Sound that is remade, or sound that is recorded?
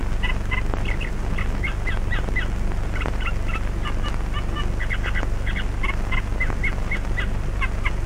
recorded